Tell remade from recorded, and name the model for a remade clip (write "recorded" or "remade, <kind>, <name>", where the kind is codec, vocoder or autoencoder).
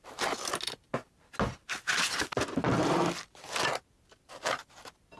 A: recorded